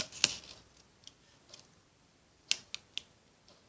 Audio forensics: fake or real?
real